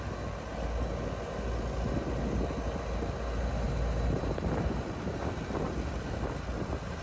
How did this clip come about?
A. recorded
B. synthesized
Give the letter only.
A